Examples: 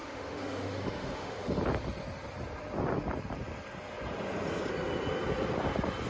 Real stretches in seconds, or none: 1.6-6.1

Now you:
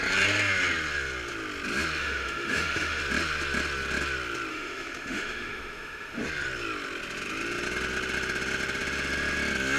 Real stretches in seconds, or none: 0.0-2.0; 3.0-4.5; 6.2-9.8

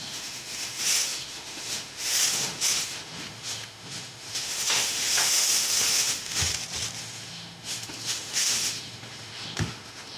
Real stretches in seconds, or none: 6.5-7.0